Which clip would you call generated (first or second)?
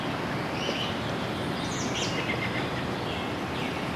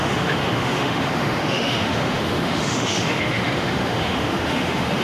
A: second